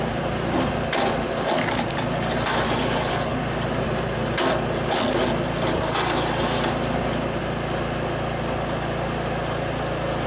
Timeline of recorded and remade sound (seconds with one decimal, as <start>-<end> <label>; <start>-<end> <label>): 0.0-10.3 recorded